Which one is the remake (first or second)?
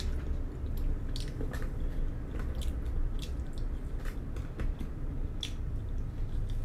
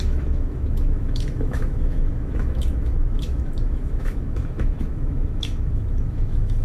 second